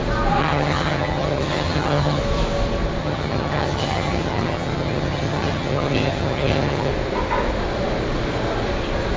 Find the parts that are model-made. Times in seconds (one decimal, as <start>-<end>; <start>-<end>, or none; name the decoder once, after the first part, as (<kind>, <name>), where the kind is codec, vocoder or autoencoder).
0.4-2.2 (vocoder, HiFi-GAN); 3.0-6.9